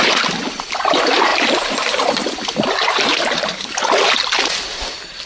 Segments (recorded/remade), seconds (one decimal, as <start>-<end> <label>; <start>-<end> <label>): 0.0-5.3 recorded